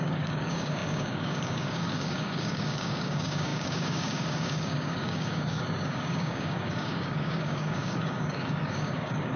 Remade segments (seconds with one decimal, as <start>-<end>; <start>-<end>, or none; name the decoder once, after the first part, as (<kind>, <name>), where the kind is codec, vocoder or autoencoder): 0.0-9.4 (codec, DAC)